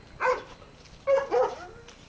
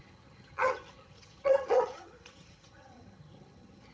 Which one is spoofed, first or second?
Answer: second